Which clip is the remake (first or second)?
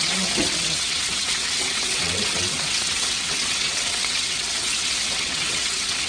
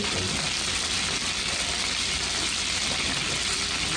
first